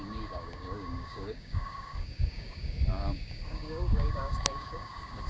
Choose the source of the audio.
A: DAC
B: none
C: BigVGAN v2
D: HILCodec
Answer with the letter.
A